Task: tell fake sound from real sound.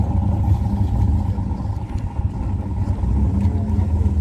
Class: real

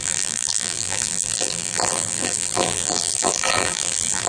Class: fake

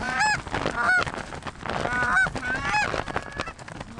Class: real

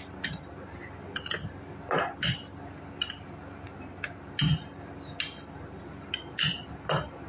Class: real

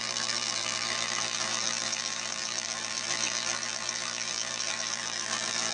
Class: fake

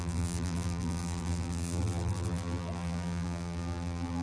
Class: fake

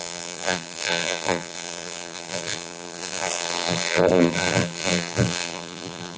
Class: fake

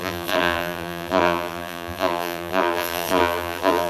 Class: fake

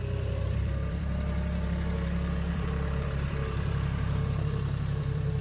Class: fake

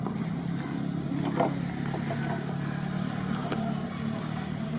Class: real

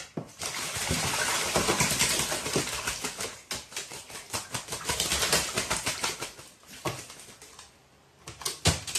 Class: real